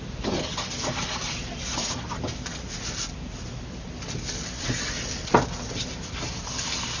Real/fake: real